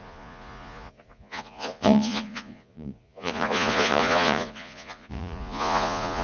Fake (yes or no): yes